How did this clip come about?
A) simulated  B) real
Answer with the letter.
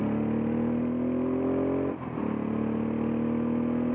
B